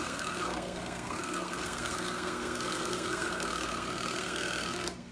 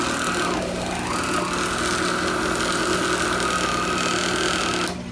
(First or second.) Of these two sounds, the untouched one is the second